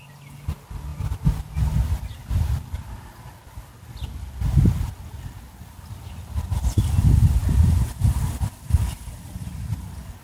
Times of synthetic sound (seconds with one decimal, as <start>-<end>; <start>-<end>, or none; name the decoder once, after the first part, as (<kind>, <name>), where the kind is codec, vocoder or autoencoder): none